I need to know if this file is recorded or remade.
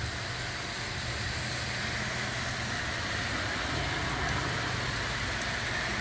recorded